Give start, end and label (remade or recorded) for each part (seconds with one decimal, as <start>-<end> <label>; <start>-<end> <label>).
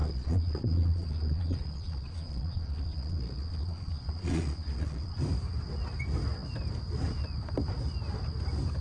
0.0-5.2 remade; 5.2-8.8 recorded